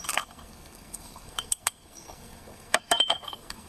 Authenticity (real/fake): fake